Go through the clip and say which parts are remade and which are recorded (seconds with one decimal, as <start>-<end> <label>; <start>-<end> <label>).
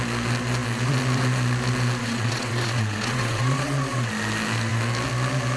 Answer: 0.0-2.0 recorded; 2.0-4.1 remade; 4.1-5.6 recorded